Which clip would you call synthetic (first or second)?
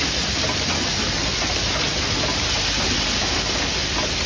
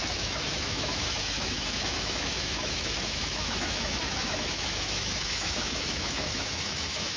second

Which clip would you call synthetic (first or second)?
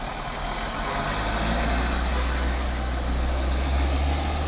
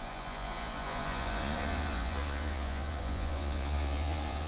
second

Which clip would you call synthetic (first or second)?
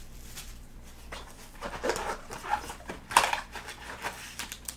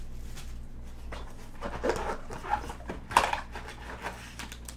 first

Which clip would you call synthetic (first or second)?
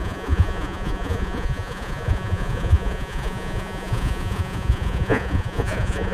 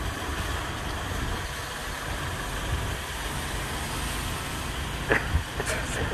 first